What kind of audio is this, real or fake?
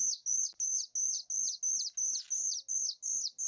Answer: real